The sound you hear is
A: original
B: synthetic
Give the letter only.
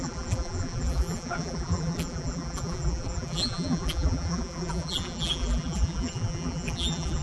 B